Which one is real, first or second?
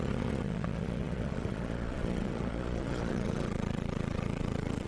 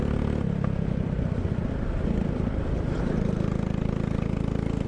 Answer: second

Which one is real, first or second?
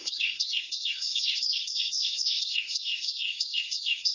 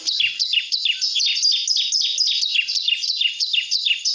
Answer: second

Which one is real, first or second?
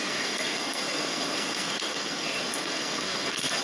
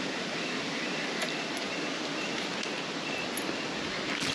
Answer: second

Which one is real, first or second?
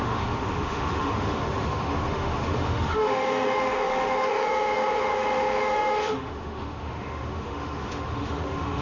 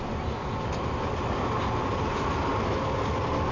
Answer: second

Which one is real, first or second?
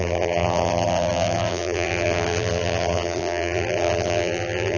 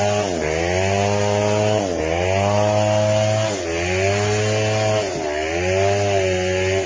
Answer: second